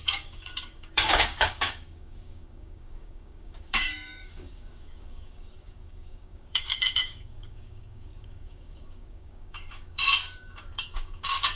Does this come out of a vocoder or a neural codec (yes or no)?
yes